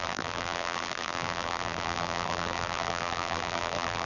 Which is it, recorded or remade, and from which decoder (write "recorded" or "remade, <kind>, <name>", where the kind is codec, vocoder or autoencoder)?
remade, vocoder, BigVGAN v2